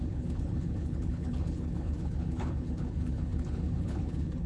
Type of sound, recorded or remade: remade